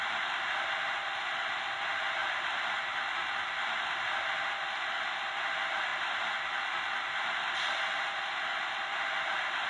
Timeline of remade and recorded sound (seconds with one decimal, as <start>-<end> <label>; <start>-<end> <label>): 0.0-9.7 recorded